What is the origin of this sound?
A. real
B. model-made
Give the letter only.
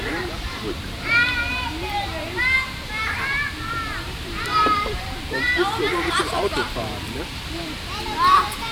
B